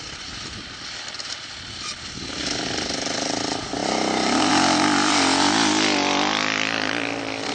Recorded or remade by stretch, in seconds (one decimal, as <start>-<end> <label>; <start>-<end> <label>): 0.0-7.5 remade